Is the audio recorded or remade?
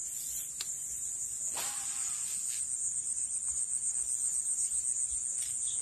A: recorded